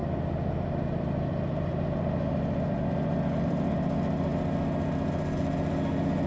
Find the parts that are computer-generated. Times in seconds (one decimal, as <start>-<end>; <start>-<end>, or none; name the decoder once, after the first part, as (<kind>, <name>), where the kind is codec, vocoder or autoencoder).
0.0-3.7 (vocoder, BigVGAN v2)